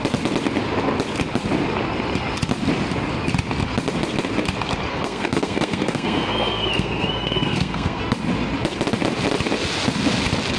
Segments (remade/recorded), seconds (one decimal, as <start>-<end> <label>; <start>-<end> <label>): 0.0-4.9 recorded; 4.9-8.0 remade; 8.0-10.6 recorded